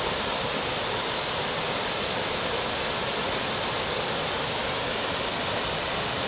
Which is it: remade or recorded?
recorded